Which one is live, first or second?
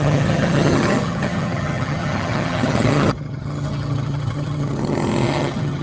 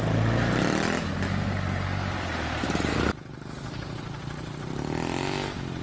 second